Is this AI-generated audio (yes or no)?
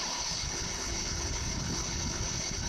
yes